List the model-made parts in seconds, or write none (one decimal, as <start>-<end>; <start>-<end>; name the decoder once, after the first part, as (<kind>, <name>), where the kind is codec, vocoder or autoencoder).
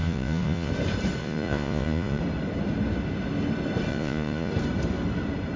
0.0-0.7 (vocoder, Vocos); 1.2-2.2; 3.9-4.5